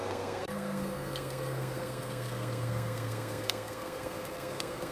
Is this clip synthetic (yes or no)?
yes